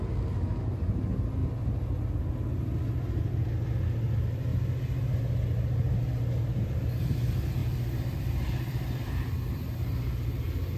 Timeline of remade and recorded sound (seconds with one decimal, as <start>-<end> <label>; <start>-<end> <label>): 0.0-7.6 recorded; 7.6-9.3 remade; 9.3-10.8 recorded